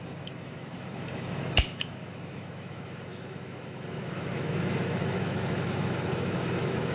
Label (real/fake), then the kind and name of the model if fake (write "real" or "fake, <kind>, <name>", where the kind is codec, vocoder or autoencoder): fake, autoencoder, DAC-VAE